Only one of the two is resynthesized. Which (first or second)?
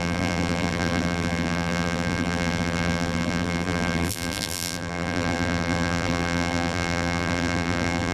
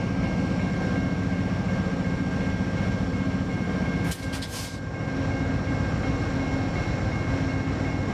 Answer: first